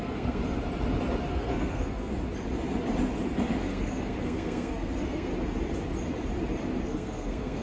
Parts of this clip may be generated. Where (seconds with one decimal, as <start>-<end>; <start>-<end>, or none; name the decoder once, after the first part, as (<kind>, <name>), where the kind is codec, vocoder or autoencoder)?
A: 0.0-0.4 (codec, SNAC); 1.3-2.1; 3.6-5.3; 6.8-7.6